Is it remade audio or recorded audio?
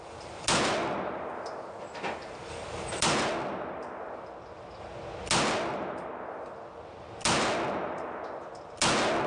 recorded